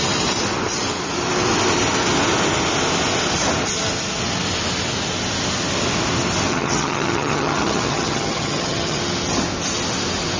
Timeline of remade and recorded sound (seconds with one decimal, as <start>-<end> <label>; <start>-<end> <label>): 0.0-6.5 recorded; 6.5-9.0 remade; 9.0-10.4 recorded